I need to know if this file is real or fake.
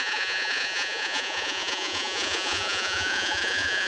fake